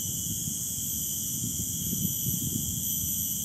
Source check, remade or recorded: remade